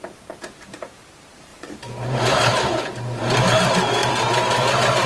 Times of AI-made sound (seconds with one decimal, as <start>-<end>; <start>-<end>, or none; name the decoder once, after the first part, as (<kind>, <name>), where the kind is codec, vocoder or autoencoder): 0.0-2.5 (vocoder, BigVGAN v2); 3.5-4.0